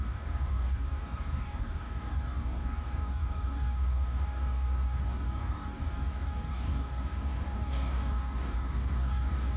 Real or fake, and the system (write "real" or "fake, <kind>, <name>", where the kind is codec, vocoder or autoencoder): fake, codec, DAC